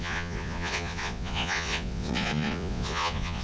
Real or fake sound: fake